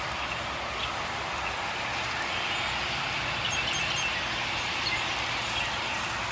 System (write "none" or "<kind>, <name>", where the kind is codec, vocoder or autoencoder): none